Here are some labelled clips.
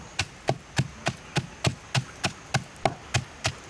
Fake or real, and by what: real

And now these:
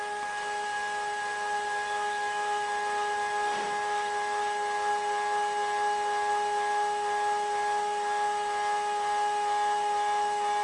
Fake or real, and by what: real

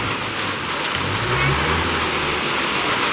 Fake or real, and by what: real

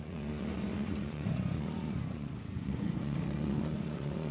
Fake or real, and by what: fake, vocoder, Vocos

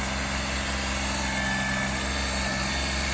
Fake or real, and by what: real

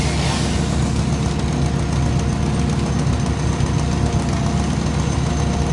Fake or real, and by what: real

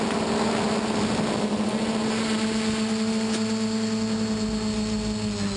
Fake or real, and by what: real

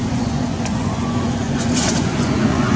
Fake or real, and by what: fake, vocoder, Vocos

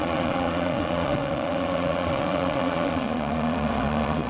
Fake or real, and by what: fake, vocoder, Vocos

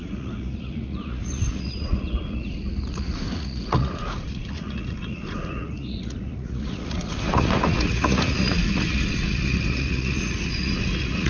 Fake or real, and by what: fake, vocoder, Vocos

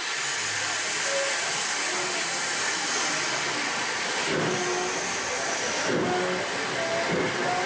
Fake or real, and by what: real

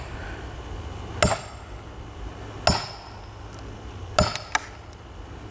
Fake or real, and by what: real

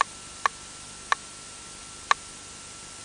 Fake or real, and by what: real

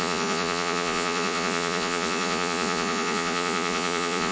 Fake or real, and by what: fake, vocoder, Vocos